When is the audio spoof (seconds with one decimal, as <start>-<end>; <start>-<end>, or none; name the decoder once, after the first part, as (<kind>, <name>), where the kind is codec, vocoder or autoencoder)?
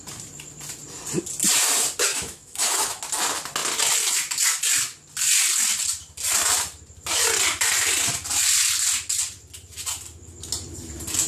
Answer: 2.1-3.0 (autoencoder, DAC-VAE)